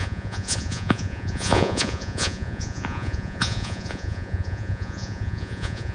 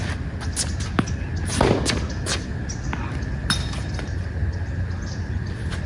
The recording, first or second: second